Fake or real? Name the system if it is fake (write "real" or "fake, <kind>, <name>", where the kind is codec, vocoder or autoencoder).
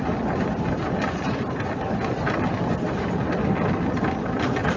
real